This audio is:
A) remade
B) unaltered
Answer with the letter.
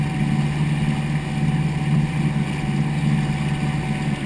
B